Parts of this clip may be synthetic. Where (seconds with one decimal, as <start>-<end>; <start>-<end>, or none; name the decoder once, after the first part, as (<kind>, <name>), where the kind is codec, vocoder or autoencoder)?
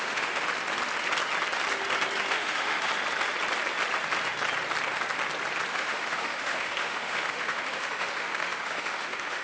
0.0-0.5 (autoencoder, DAC-VAE); 2.3-2.9; 5.7-9.4